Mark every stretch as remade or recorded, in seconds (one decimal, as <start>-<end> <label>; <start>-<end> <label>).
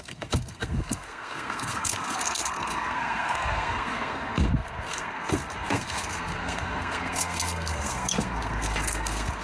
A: 0.0-9.4 remade